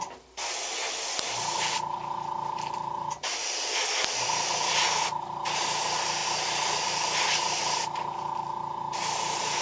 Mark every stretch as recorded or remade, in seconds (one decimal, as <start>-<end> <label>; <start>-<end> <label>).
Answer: 0.0-9.6 recorded